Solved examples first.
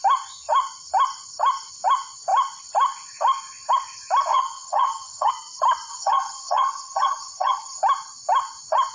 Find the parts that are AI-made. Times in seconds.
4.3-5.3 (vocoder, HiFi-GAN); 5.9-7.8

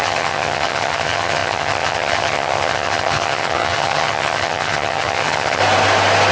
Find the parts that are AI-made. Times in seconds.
0.0-5.6 (vocoder, HiFi-GAN)

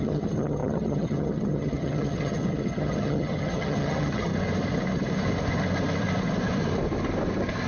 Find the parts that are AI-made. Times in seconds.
0.0-4.3 (vocoder, HiFi-GAN)

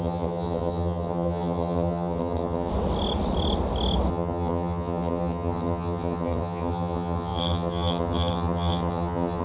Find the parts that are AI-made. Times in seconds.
0.0-2.7 (vocoder, HiFi-GAN); 4.1-9.4

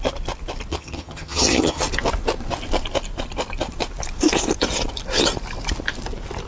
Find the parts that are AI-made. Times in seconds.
0.7-1.8 (vocoder, HiFi-GAN)

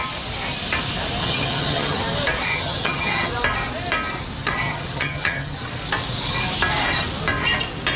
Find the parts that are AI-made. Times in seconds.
1.2-2.0 (vocoder, HiFi-GAN); 2.5-3.3; 4.4-5.6